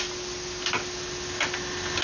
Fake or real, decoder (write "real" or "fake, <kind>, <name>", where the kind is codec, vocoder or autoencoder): real